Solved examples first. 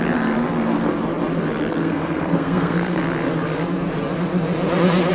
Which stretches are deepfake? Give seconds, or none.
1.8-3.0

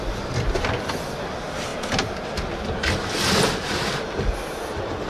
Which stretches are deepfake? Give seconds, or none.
none

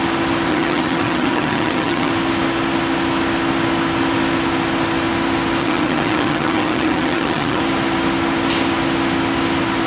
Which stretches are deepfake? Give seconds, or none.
0.5-2.1; 5.6-7.6